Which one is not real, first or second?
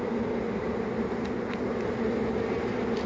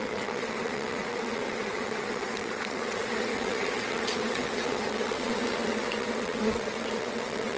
second